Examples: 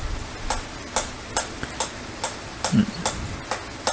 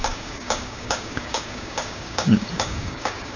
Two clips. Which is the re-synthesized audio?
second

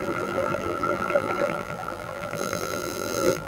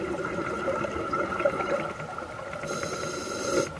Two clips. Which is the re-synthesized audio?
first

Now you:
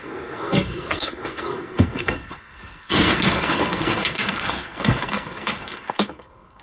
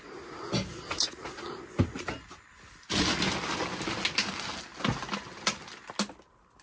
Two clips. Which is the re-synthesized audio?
first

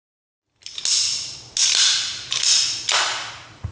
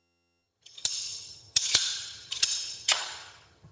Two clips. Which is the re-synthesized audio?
second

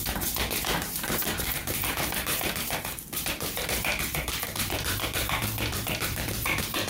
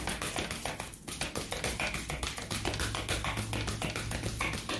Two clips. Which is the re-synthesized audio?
first